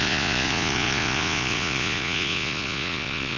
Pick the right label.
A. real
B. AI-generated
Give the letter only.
B